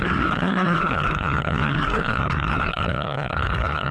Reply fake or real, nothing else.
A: fake